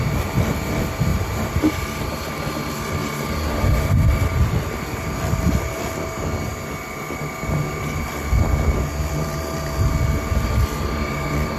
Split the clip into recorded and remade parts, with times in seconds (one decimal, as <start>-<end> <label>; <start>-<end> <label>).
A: 0.0-1.1 recorded; 1.1-2.3 remade; 2.3-3.0 recorded; 3.0-4.0 remade; 4.0-11.6 recorded